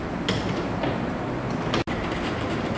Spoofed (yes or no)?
no